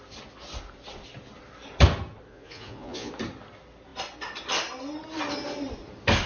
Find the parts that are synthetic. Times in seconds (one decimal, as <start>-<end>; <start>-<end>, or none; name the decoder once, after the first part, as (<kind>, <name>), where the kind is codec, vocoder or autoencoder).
2.3-3.1 (vocoder, Vocos)